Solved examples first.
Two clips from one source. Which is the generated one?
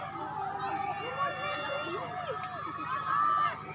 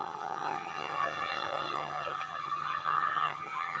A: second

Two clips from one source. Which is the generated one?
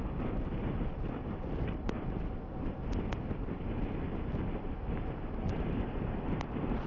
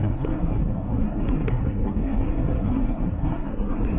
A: second